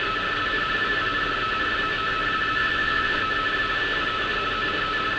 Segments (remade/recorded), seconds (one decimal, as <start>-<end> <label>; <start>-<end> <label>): 0.0-2.6 recorded; 2.6-3.2 remade; 3.2-5.2 recorded